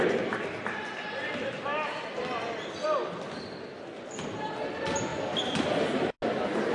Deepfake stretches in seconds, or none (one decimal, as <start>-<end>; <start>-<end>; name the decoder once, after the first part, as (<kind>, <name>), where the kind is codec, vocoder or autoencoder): none